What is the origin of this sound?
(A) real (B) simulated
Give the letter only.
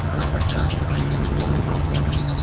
B